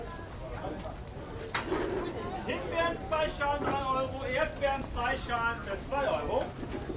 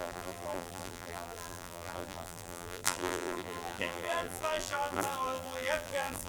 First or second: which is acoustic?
first